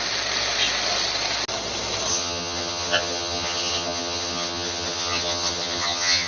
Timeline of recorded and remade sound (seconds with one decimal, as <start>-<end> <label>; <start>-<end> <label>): 0.0-2.1 recorded; 2.1-6.3 remade